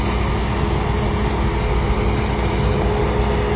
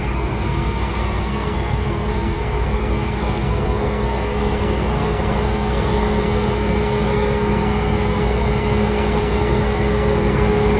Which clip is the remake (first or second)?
second